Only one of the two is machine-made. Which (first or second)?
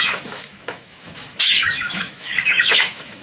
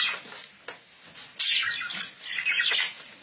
first